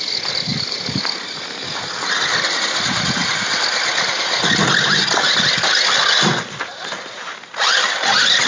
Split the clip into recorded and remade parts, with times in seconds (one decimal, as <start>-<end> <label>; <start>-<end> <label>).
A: 0.0-8.5 recorded